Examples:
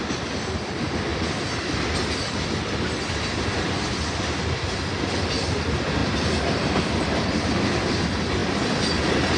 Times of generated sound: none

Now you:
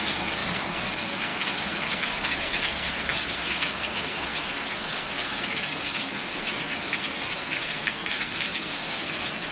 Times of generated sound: 0.0-9.5 (codec, SNAC)

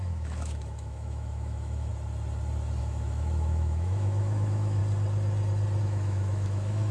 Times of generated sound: 0.0-1.9 (autoencoder, DAC-VAE); 2.8-4.8; 5.8-6.9

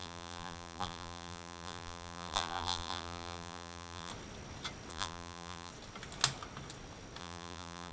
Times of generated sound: 0.0-4.1 (vocoder, BigVGAN v2); 4.9-5.7; 7.2-7.9